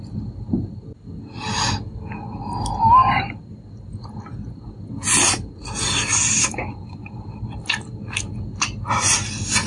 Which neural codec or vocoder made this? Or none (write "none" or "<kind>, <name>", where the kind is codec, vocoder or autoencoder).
none